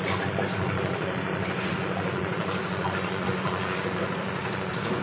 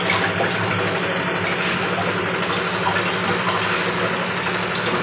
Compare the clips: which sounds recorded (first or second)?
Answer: second